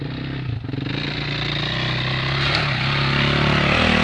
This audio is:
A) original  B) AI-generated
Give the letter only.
A